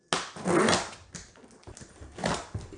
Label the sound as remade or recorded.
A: recorded